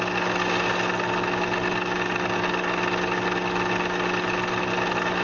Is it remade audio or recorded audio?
recorded